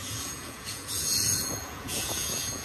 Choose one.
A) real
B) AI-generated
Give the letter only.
B